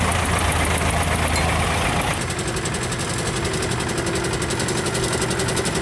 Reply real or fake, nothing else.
real